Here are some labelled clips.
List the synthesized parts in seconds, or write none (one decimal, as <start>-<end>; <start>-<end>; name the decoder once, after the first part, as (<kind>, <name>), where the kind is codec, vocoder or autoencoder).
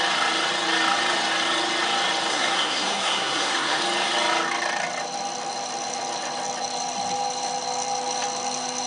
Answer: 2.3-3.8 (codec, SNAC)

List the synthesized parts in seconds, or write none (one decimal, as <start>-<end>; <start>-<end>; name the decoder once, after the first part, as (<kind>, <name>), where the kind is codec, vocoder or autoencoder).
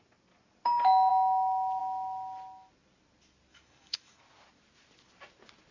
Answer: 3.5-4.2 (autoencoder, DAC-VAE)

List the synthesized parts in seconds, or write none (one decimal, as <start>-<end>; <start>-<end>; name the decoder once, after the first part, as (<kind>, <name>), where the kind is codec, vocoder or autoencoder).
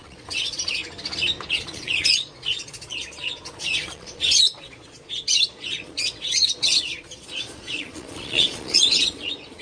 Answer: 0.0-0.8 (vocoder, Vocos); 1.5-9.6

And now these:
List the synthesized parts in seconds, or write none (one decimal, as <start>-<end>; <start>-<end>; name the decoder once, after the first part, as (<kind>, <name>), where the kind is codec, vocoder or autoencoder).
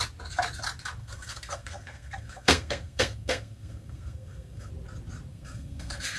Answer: 1.0-4.7 (codec, SNAC); 5.3-6.2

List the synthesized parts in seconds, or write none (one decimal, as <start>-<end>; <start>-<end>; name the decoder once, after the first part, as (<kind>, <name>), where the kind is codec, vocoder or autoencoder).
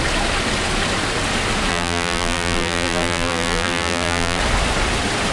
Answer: 1.7-4.4 (vocoder, BigVGAN v2)